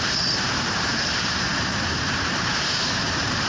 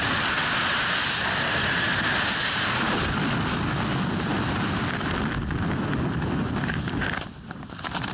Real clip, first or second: second